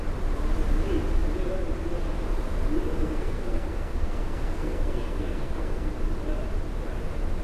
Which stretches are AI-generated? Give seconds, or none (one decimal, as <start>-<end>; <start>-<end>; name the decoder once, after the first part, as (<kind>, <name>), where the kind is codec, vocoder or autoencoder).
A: 2.9-5.9 (codec, SNAC)